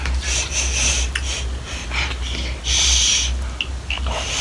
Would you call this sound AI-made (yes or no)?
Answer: no